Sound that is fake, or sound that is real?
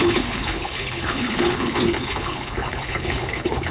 fake